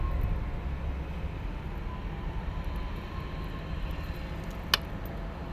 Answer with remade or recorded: recorded